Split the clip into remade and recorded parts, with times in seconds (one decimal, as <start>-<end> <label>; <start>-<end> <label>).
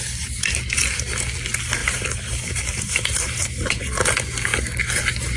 0.0-1.8 recorded; 1.8-3.8 remade; 3.8-5.4 recorded